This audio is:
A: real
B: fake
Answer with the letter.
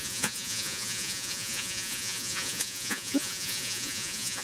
B